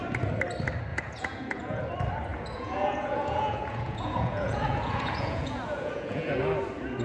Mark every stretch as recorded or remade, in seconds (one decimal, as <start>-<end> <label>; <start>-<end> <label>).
0.0-0.9 recorded; 0.9-1.8 remade; 1.8-2.3 recorded; 2.3-6.4 remade; 6.4-7.0 recorded

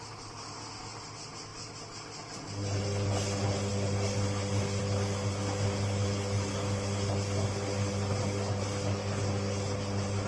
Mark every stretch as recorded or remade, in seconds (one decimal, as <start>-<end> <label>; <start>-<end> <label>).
0.0-10.3 recorded

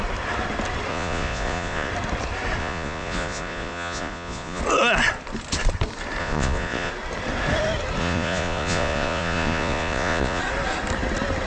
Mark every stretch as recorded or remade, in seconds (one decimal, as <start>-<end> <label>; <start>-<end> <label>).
0.0-0.9 recorded; 0.9-1.9 remade; 1.9-2.6 recorded; 2.6-4.6 remade; 4.6-6.2 recorded; 6.2-6.9 remade; 6.9-8.0 recorded; 8.0-10.4 remade; 10.4-11.5 recorded

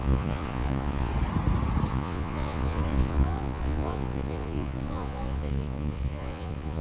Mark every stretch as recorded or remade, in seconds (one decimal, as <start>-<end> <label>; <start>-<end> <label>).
0.0-1.1 remade; 1.1-1.9 recorded; 1.9-6.8 remade

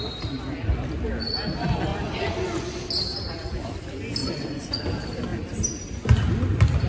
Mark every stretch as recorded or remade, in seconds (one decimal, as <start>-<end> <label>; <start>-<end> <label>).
0.0-1.9 recorded; 1.9-2.8 remade; 2.8-4.2 recorded; 4.2-4.8 remade; 4.8-6.9 recorded

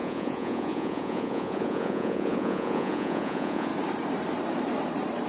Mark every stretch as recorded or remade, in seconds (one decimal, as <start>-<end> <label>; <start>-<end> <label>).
0.0-3.7 remade; 3.7-5.3 recorded

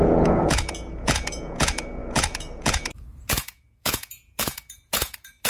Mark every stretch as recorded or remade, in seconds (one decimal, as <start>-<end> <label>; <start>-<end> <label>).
0.0-5.5 remade